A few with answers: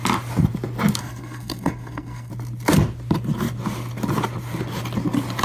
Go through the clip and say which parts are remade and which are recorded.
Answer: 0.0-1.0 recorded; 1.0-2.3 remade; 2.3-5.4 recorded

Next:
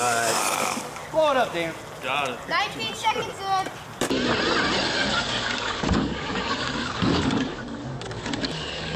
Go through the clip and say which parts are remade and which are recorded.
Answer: 0.0-1.0 remade; 1.0-5.1 recorded; 5.1-9.0 remade

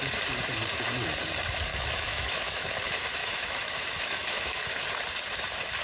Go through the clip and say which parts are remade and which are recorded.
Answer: 0.0-1.7 recorded; 1.7-2.8 remade; 2.8-3.2 recorded; 3.2-4.8 remade; 4.8-5.8 recorded

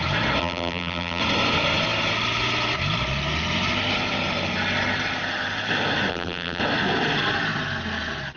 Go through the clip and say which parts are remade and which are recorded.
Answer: 0.0-0.4 recorded; 0.4-1.2 remade; 1.2-6.1 recorded; 6.1-6.6 remade; 6.6-8.4 recorded

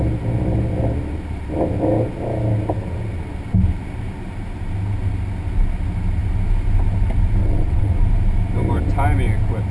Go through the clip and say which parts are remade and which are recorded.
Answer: 0.0-7.4 recorded; 7.4-7.9 remade; 7.9-9.7 recorded

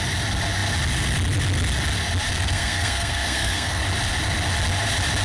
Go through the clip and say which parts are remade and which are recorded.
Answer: 0.0-2.3 recorded; 2.3-3.8 remade; 3.8-5.2 recorded